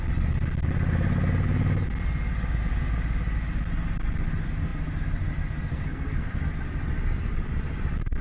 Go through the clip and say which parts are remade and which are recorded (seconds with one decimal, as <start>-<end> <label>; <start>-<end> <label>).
0.0-5.7 recorded; 5.7-6.4 remade; 6.4-8.2 recorded